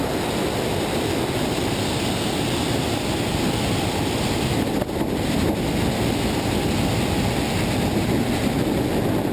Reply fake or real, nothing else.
real